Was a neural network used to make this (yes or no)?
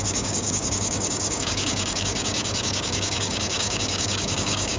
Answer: yes